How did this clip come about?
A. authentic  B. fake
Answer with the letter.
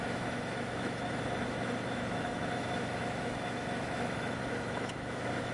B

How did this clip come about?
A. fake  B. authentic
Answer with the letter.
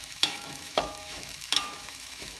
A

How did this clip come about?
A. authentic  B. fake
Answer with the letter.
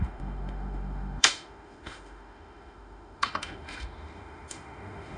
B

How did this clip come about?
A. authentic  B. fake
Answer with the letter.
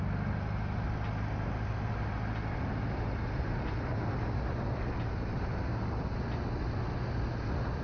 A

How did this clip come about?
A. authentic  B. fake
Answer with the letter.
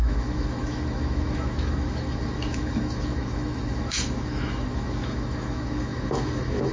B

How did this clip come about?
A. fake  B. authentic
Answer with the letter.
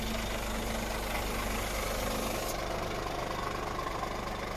B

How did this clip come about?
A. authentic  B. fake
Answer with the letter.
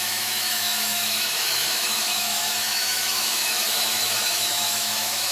B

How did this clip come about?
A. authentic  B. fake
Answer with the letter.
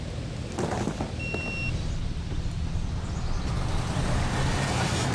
A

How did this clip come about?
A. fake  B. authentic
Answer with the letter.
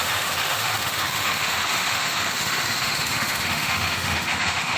A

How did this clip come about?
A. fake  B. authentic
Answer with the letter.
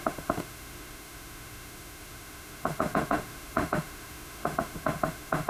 A